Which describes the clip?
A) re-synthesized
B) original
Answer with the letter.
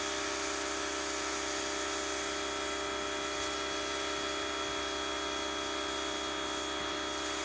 B